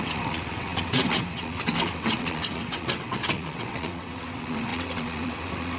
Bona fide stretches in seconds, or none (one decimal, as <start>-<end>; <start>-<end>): none